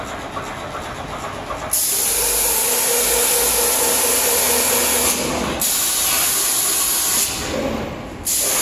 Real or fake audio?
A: real